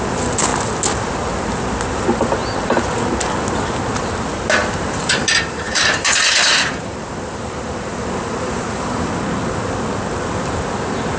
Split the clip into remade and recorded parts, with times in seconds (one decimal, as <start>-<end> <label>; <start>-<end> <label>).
0.0-4.6 recorded; 4.6-9.1 remade; 9.1-11.2 recorded